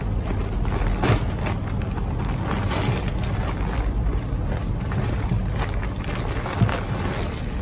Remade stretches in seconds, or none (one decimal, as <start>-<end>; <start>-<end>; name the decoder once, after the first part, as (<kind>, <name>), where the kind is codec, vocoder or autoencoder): 4.6-5.3 (vocoder, BigVGAN v2)